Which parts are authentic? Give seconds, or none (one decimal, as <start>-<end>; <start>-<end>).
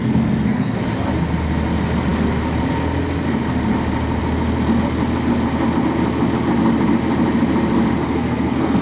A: 0.8-8.0